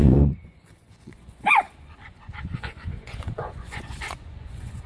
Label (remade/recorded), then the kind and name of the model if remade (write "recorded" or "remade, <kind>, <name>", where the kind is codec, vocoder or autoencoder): remade, vocoder, Vocos